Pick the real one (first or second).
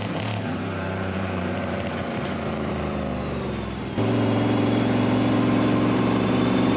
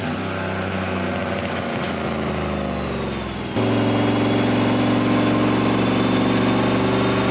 second